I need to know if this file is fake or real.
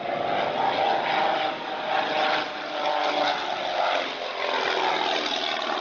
real